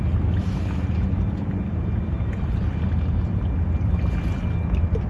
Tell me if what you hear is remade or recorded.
recorded